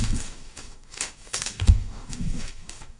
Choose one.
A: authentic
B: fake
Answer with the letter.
B